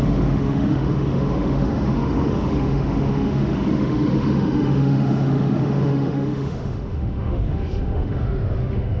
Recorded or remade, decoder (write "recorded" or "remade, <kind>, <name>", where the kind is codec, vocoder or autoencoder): remade, autoencoder, DAC-VAE